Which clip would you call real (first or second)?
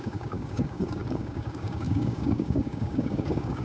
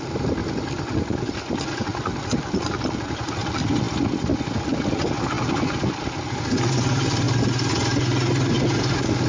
second